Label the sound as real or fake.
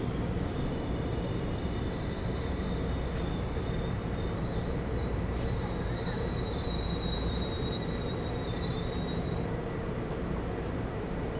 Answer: fake